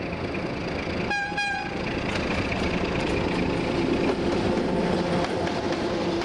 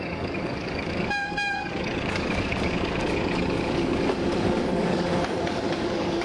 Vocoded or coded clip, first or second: second